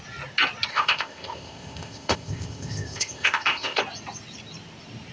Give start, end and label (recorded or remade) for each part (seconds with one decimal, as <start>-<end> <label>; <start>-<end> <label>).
0.0-0.7 recorded; 0.7-3.8 remade; 3.8-5.1 recorded